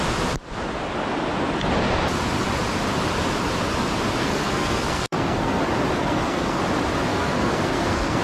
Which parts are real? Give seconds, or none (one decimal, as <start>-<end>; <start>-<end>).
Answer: 0.0-4.2; 5.6-6.0; 6.6-7.1